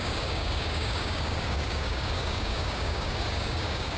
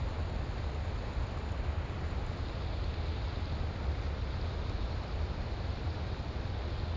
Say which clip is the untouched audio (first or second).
second